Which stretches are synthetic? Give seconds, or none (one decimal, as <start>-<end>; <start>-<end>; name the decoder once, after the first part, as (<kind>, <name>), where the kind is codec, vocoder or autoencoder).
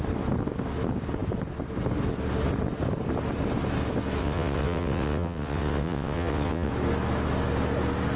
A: 4.2-6.7 (vocoder, WaveNeXt)